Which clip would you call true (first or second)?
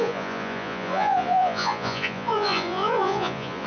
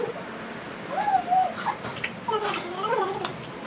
second